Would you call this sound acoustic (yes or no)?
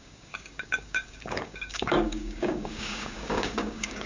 no